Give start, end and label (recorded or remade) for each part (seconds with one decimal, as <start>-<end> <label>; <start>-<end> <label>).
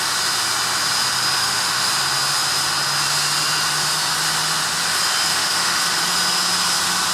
0.0-1.4 recorded; 1.4-1.9 remade; 1.9-5.3 recorded; 5.3-5.8 remade; 5.8-7.1 recorded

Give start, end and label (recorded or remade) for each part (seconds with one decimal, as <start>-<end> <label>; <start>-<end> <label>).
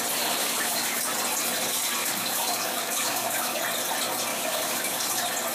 0.0-0.4 recorded; 0.4-1.0 remade; 1.0-2.0 recorded; 2.0-3.6 remade; 3.6-4.3 recorded; 4.3-5.1 remade; 5.1-5.5 recorded